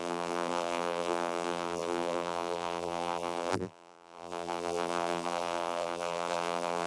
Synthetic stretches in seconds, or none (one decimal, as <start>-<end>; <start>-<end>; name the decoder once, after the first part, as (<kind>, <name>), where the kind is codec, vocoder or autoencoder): 0.0-6.9 (vocoder, BigVGAN v2)